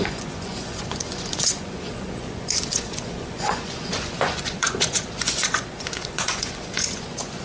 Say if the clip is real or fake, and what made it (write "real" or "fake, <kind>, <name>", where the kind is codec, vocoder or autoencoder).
fake, vocoder, Vocos